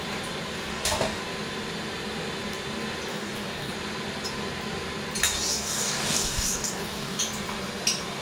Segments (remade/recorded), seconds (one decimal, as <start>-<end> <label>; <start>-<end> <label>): 0.0-0.7 recorded; 0.7-1.2 remade; 1.2-3.1 recorded; 3.1-3.7 remade; 3.7-5.5 recorded; 5.5-7.2 remade; 7.2-8.2 recorded

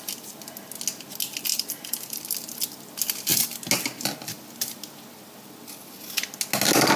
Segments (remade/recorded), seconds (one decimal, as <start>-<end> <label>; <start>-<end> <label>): 0.0-1.5 recorded; 1.5-2.2 remade; 2.2-7.0 recorded

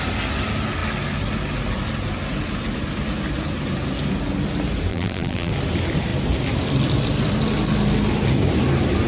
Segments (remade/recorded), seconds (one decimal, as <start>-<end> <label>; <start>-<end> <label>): 0.0-4.9 recorded; 4.9-5.5 remade; 5.5-9.1 recorded

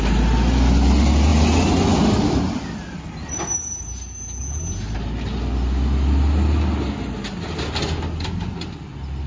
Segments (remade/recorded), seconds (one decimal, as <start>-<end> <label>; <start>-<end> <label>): 0.0-9.3 recorded

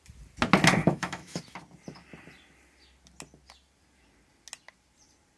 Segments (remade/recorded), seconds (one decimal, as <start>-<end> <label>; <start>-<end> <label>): 0.0-0.8 recorded; 0.8-1.4 remade; 1.4-5.4 recorded

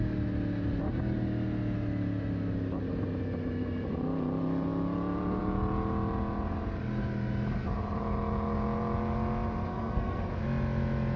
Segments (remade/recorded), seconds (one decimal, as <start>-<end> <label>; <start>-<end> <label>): 0.0-9.7 recorded; 9.7-10.3 remade; 10.3-11.2 recorded

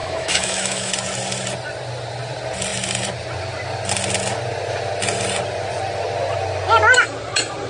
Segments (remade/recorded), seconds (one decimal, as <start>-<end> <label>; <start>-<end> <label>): 0.0-0.9 remade; 0.9-7.7 recorded

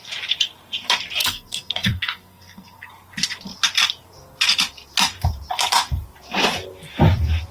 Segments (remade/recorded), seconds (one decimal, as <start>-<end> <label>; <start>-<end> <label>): 0.0-1.2 recorded; 1.2-2.9 remade; 2.9-7.5 recorded